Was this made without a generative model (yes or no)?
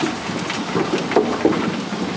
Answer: yes